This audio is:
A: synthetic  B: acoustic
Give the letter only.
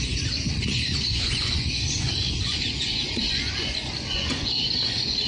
A